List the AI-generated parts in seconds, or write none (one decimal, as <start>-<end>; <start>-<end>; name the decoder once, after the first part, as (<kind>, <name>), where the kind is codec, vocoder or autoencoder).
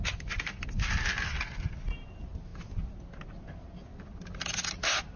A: none